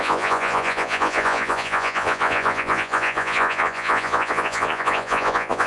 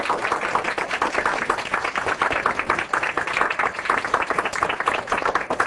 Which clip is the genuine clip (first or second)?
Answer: second